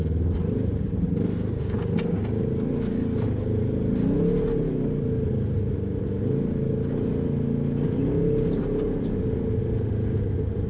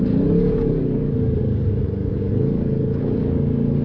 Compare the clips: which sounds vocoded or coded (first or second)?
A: second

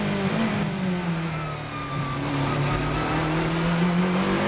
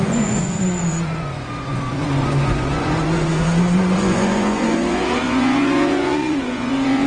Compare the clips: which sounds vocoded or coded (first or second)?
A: second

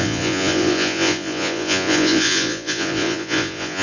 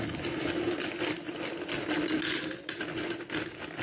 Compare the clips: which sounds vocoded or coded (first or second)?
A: first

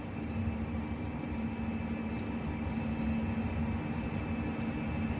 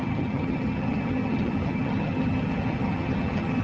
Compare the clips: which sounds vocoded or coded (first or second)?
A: second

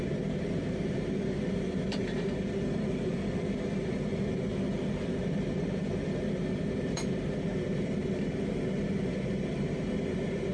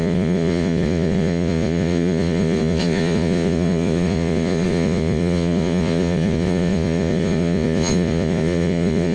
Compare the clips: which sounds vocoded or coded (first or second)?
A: second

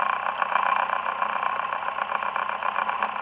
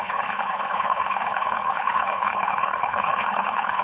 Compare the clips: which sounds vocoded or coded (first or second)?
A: second